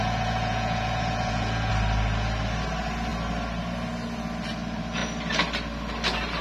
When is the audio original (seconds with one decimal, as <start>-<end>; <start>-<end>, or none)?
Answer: 1.7-6.4

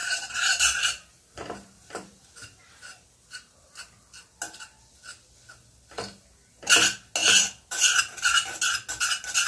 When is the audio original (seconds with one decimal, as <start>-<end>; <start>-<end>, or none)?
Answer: 4.0-7.2; 8.0-9.5